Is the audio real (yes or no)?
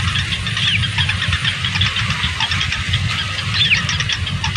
yes